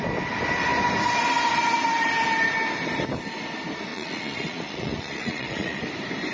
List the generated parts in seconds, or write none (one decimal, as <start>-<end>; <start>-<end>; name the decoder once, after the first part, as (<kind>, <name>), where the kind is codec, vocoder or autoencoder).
3.9-5.8 (vocoder, Vocos)